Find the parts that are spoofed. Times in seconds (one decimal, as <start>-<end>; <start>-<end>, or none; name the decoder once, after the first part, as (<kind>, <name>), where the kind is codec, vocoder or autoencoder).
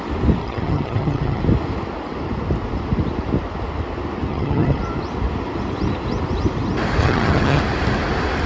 0.4-1.4 (vocoder, HiFi-GAN); 4.3-4.8; 7.0-7.6